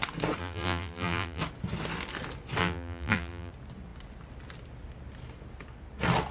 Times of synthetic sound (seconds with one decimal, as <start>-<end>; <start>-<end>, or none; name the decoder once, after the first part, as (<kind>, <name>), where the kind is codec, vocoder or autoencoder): 0.4-1.4 (vocoder, BigVGAN v2); 2.6-3.5